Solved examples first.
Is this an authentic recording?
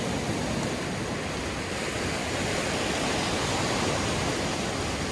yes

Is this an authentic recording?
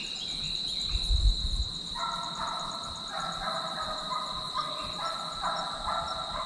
yes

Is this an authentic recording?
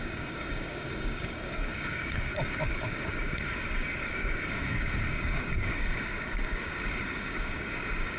no